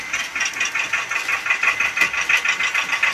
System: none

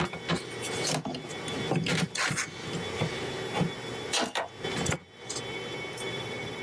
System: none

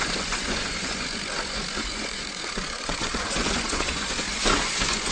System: vocoder, Vocos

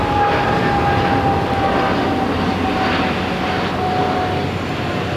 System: none